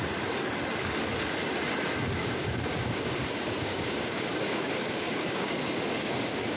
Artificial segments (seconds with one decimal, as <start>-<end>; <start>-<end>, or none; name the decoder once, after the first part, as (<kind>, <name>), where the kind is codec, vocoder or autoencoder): 2.2-6.6 (codec, DAC)